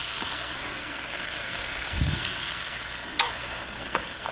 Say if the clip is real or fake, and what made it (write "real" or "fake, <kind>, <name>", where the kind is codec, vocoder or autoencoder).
fake, codec, SNAC